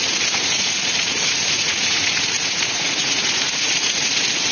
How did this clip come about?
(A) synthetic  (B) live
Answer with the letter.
A